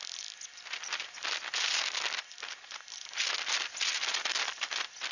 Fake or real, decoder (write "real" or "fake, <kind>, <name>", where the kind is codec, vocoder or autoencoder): real